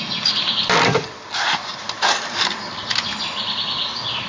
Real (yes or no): yes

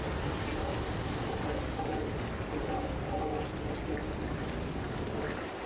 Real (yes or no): yes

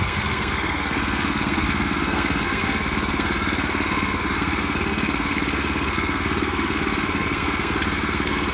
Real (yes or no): no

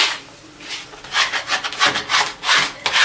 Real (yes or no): yes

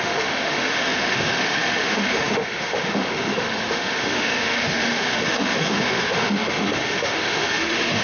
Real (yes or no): no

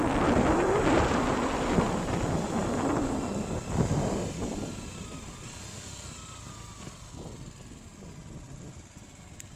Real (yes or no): yes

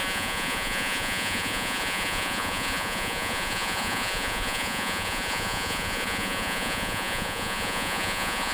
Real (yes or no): no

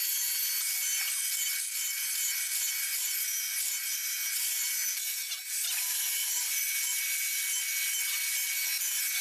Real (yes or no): yes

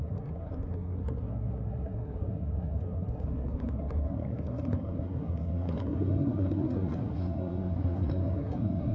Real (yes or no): no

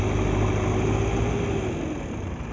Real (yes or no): yes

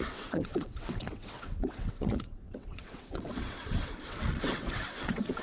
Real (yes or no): no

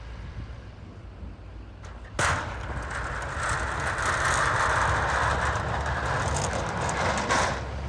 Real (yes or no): yes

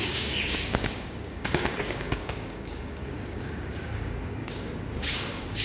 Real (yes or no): no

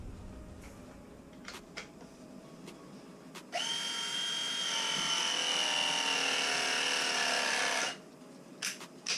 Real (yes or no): yes